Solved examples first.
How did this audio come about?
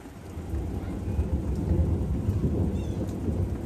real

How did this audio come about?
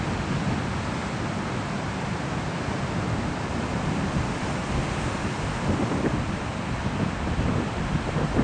real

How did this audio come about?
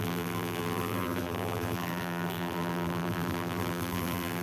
fake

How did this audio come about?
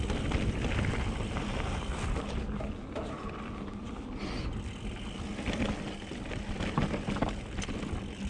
real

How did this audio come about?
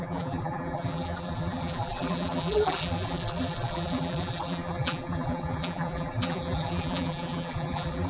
fake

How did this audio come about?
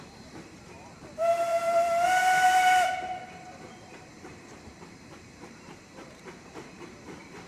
fake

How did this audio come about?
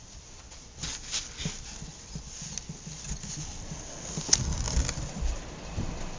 real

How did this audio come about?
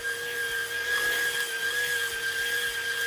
real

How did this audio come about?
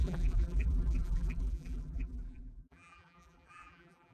fake